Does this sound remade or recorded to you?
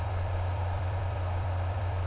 remade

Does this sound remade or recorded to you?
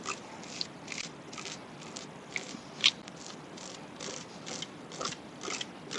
recorded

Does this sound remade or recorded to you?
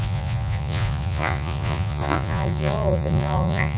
remade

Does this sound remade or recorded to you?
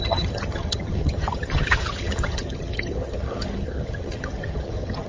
remade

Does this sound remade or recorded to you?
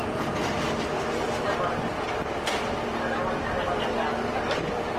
recorded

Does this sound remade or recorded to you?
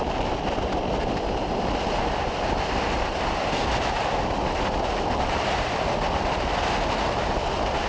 recorded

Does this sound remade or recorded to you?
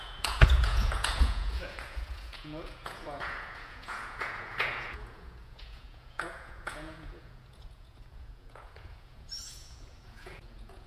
remade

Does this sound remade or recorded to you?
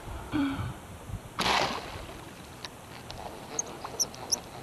remade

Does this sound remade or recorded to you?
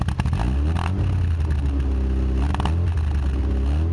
recorded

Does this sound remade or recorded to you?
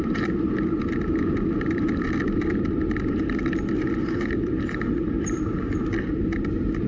remade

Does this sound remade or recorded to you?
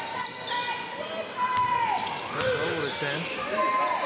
recorded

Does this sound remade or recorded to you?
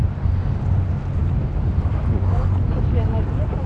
recorded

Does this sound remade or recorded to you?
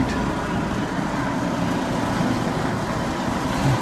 recorded